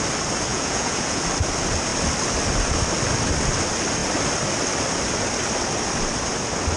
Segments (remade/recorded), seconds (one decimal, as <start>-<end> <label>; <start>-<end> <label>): 0.0-0.5 recorded; 0.5-1.2 remade; 1.2-6.8 recorded